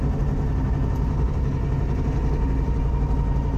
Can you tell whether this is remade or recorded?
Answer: recorded